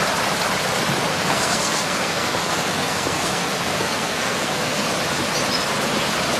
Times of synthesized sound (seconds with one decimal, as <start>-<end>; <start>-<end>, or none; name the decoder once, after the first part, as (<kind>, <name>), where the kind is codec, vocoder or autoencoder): 1.1-4.9 (codec, SNAC)